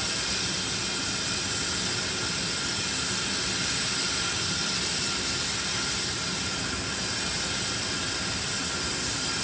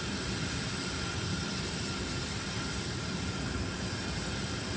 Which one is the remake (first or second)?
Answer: second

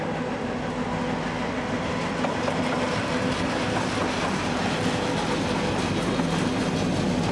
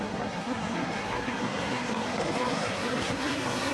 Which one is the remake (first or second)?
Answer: second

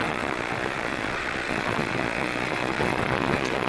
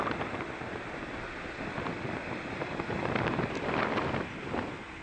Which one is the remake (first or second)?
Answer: first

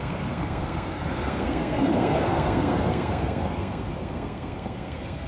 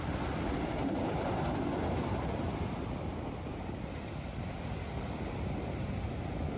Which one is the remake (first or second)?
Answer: first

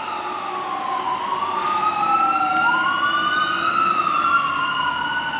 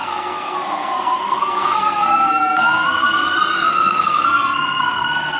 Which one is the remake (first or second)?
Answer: second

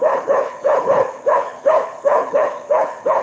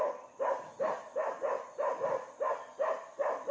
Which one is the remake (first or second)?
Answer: first